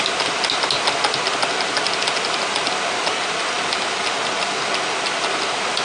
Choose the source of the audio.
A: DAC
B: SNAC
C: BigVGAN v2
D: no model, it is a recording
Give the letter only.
D